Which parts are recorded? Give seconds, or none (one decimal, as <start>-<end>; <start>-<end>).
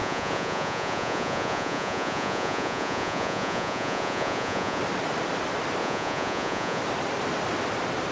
4.8-5.8; 6.8-8.1